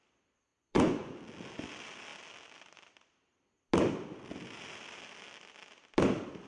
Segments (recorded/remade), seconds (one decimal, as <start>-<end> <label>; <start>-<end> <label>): 0.0-0.5 recorded; 0.5-1.1 remade; 1.1-6.5 recorded